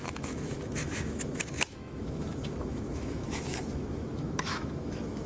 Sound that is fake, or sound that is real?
fake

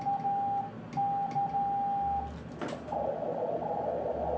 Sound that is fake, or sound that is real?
real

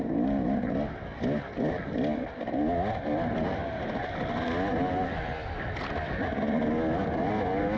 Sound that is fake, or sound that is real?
real